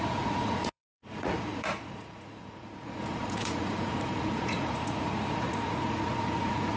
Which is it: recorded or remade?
remade